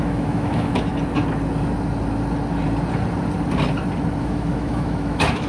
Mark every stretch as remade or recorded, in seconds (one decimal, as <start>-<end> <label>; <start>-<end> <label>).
0.0-0.9 remade; 0.9-4.2 recorded; 4.2-5.5 remade